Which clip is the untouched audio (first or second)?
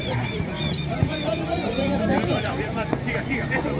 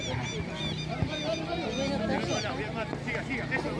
second